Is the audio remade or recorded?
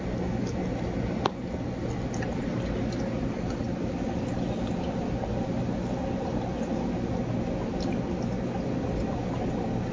recorded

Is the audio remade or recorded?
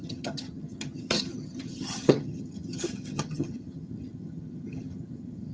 remade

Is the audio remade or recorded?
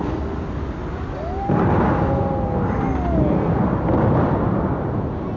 recorded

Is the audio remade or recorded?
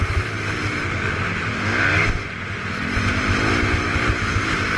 recorded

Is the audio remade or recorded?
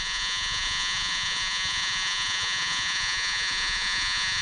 remade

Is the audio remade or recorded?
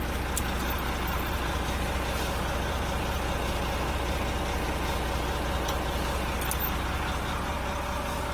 recorded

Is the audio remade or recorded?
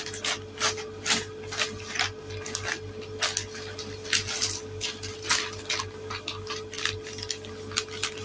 recorded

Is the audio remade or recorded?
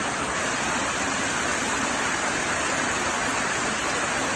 recorded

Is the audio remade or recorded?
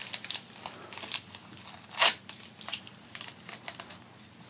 recorded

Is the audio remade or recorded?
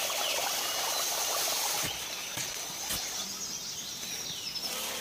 recorded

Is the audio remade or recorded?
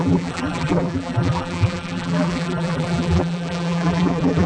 remade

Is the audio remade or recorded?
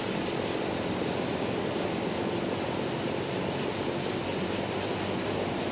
recorded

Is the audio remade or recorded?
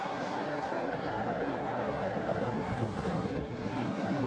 remade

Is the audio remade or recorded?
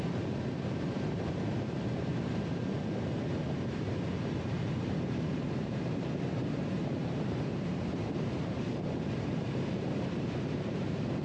remade